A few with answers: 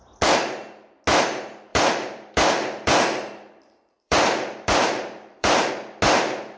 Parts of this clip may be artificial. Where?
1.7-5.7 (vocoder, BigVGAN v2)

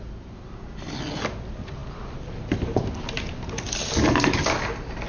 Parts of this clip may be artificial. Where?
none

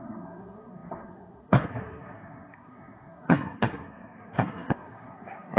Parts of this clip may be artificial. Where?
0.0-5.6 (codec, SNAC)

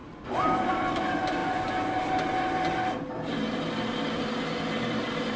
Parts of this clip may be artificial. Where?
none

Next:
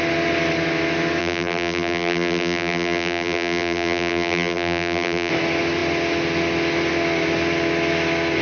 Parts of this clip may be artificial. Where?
1.2-5.3 (vocoder, BigVGAN v2)

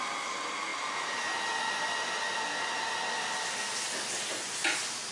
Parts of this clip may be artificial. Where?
none

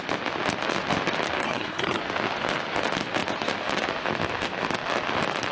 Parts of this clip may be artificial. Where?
1.4-2.0 (codec, SNAC)

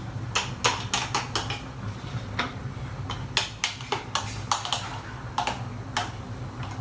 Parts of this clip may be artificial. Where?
none